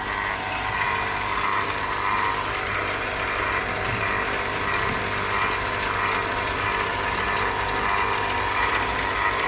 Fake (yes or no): no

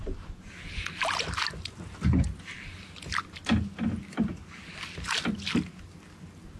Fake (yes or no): no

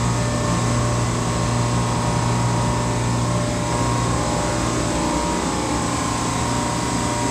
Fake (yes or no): no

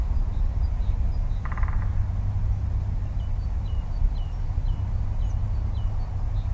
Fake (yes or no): no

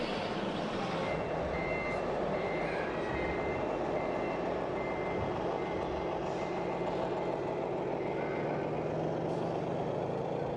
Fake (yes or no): no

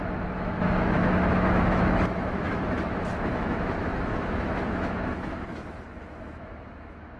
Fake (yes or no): yes